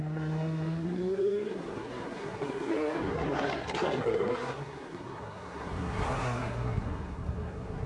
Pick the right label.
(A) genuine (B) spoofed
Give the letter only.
B